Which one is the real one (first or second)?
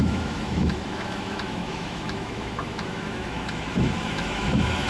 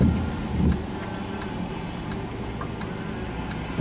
second